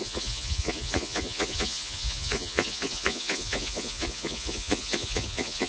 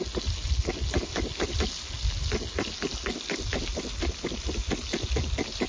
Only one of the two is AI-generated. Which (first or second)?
first